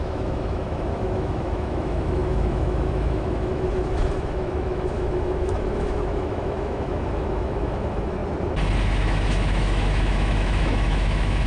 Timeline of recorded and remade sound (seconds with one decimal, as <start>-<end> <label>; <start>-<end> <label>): 0.0-8.2 remade; 8.2-8.8 recorded; 8.8-11.5 remade